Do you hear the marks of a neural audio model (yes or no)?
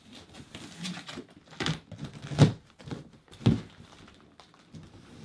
no